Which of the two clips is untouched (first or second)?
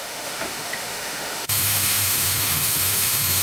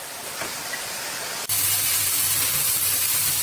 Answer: second